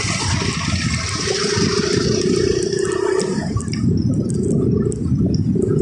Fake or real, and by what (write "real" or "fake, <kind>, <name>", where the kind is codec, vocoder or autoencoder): real